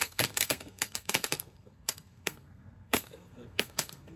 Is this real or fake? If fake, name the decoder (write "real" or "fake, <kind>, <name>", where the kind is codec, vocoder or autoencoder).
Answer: fake, codec, SNAC